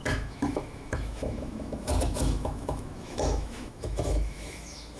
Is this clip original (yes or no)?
no